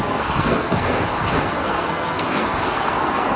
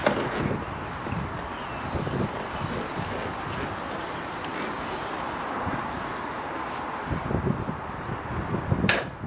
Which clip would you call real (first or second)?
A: second